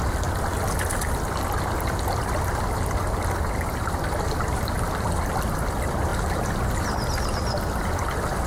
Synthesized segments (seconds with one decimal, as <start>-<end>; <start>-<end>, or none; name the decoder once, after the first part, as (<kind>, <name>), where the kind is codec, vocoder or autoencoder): none